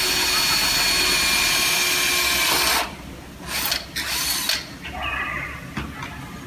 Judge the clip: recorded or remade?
recorded